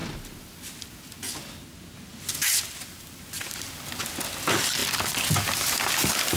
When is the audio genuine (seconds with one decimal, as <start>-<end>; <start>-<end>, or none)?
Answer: 0.0-2.1; 4.3-4.8; 5.3-6.4